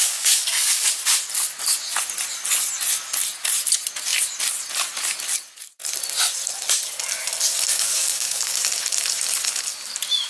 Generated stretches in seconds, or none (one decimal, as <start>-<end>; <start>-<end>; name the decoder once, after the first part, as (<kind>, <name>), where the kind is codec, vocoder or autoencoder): 0.0-0.9 (codec, DAC); 7.7-8.6